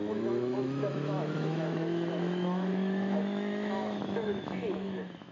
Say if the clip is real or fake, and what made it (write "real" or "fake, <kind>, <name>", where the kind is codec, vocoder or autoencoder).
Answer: fake, autoencoder, DAC-VAE